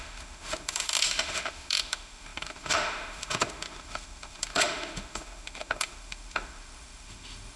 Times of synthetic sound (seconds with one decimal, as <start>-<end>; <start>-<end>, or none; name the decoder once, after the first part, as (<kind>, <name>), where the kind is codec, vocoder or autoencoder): 0.0-7.6 (autoencoder, DAC-VAE)